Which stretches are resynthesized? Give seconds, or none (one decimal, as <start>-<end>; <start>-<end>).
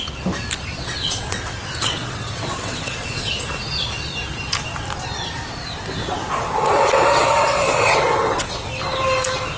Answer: 0.7-3.3; 6.0-8.7